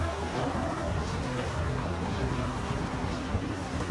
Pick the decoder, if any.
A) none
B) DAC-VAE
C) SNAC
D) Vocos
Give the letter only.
C